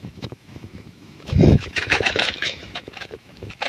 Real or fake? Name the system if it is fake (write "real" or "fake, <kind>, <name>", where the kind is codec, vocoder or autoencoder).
fake, autoencoder, DAC-VAE